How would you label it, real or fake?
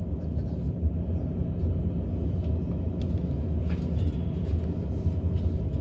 real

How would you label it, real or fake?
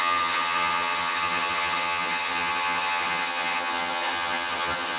fake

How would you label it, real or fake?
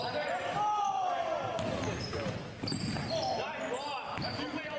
real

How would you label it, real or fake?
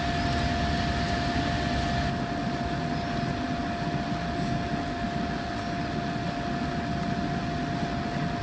real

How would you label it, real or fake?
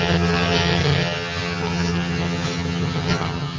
fake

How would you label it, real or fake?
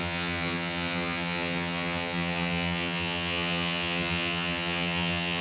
fake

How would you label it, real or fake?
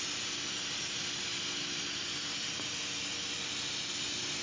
real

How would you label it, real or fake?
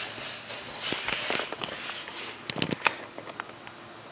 real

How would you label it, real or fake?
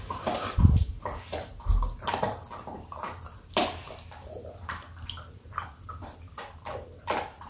real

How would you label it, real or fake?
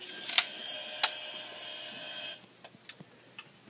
real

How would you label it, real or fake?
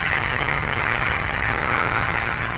fake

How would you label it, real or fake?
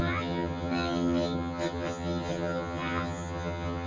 fake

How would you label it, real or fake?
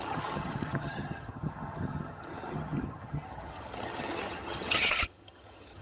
fake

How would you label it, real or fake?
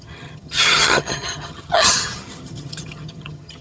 fake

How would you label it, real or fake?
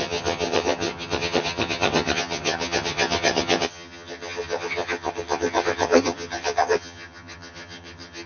fake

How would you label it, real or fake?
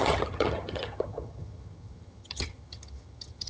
fake